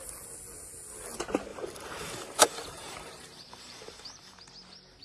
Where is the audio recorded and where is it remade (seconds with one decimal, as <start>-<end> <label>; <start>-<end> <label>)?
0.0-1.5 recorded; 1.5-4.5 remade; 4.5-5.0 recorded